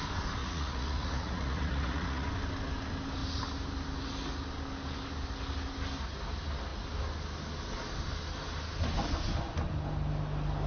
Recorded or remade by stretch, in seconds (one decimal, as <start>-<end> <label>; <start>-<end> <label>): 0.0-0.4 recorded; 0.4-2.3 remade; 2.3-10.7 recorded